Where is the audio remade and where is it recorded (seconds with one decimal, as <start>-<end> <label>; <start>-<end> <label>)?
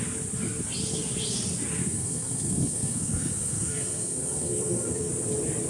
0.0-1.8 recorded; 1.8-5.1 remade; 5.1-5.7 recorded